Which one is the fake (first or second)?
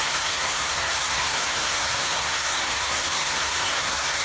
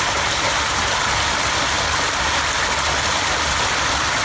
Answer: first